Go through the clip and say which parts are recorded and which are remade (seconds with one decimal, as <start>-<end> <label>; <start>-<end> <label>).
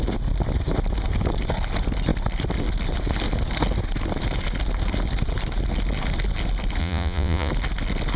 0.0-6.8 recorded; 6.8-7.5 remade; 7.5-8.2 recorded